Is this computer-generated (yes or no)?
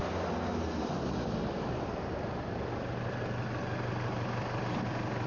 no